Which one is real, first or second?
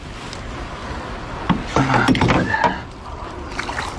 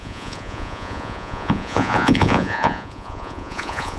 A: first